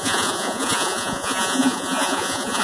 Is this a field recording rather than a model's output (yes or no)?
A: no